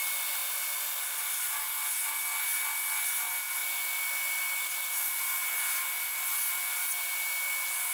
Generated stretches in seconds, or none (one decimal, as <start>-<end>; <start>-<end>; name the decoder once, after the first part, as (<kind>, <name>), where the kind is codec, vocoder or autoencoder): none